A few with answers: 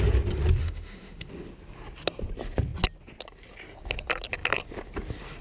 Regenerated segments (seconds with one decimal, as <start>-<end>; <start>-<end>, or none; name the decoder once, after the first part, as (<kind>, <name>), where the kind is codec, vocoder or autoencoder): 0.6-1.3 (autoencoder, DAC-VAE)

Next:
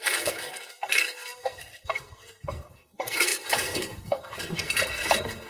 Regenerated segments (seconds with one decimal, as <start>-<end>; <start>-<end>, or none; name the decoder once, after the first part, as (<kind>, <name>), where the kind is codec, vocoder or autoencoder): 0.0-5.5 (codec, SNAC)

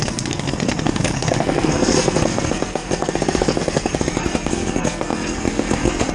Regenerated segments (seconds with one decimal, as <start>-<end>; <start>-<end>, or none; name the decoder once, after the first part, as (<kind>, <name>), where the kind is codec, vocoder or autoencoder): 0.0-6.1 (codec, SNAC)